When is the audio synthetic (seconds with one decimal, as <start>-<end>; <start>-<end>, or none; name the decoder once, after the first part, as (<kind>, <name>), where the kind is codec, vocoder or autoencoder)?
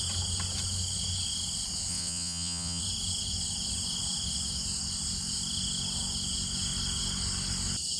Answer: 1.9-2.8 (vocoder, WaveNeXt)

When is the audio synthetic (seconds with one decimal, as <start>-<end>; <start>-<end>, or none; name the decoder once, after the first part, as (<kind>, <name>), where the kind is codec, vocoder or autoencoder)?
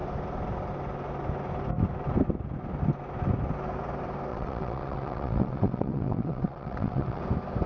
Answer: 4.3-7.2 (vocoder, WaveNeXt)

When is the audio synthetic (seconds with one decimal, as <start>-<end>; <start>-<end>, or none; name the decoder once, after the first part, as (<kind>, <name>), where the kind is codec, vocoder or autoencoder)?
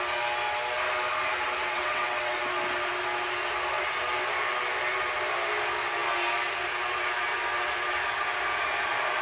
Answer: 1.6-2.4 (vocoder, WaveNeXt)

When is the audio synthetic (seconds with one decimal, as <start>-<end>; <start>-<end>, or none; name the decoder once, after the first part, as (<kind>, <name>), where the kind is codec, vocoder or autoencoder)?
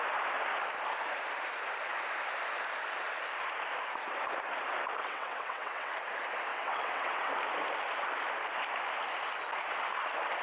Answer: 5.0-5.9 (vocoder, WaveNeXt); 6.5-7.3